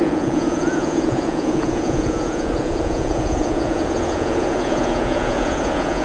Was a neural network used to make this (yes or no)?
yes